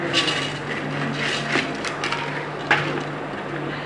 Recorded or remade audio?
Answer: recorded